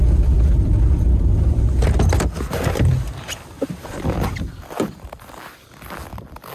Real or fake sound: real